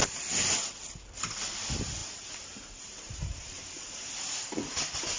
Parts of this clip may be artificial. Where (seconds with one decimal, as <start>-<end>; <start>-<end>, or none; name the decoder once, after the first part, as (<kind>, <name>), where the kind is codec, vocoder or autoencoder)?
2.0-4.5 (vocoder, BigVGAN v2)